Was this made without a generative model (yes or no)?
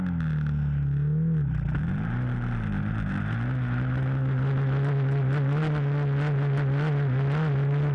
yes